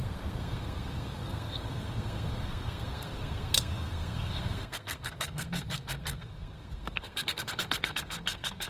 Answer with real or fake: fake